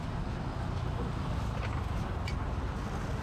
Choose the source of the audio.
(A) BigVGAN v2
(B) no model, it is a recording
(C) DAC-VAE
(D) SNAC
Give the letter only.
B